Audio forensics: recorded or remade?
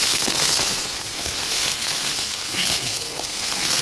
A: remade